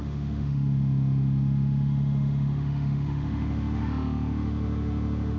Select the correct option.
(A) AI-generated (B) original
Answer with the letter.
A